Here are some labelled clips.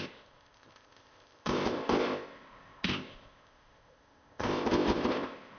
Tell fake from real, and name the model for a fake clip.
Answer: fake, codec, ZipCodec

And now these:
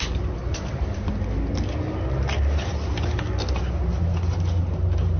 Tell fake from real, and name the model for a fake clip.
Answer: real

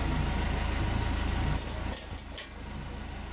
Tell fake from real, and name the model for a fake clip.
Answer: real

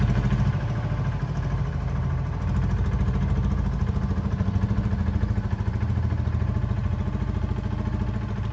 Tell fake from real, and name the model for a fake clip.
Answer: real